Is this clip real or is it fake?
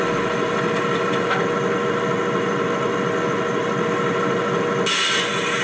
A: real